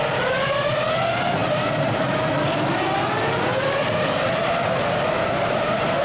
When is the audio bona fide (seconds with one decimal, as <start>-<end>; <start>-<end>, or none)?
0.0-6.0

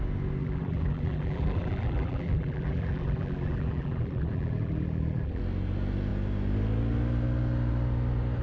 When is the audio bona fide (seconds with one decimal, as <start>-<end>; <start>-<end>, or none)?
0.0-0.4; 5.4-8.4

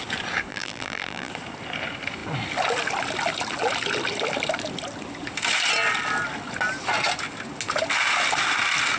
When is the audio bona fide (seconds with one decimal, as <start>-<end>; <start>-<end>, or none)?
0.0-0.5; 1.3-9.0